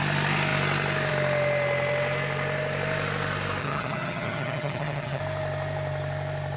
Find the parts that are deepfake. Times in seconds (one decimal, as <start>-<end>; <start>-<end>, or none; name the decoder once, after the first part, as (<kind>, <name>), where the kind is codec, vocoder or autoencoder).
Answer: 3.6-5.2 (vocoder, HiFi-GAN)